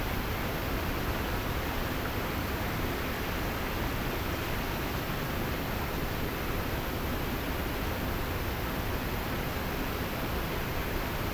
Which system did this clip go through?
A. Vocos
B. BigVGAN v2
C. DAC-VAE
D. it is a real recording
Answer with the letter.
D